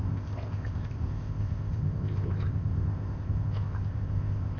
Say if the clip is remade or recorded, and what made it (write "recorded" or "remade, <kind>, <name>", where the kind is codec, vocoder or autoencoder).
remade, codec, ZipCodec